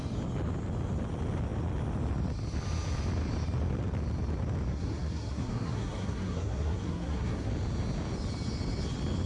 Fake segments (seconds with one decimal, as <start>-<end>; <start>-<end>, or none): 4.7-7.5